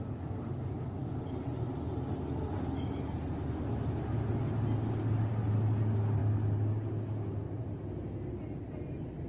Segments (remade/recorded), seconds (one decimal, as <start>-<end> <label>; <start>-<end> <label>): 0.0-9.3 recorded